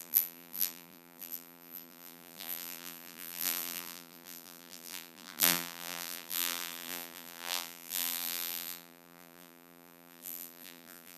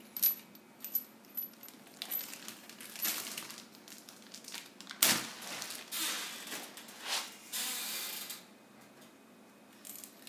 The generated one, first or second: first